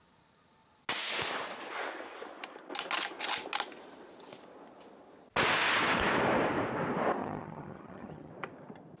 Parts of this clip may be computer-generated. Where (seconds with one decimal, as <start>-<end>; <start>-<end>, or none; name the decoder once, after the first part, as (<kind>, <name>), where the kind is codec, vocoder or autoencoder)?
7.2-8.3 (vocoder, HiFi-GAN)